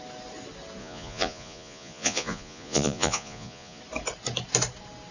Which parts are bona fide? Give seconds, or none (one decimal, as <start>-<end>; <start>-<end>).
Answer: 0.0-0.8; 3.8-5.1